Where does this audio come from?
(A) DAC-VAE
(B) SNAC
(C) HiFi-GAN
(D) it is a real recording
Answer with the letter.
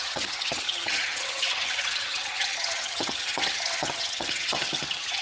C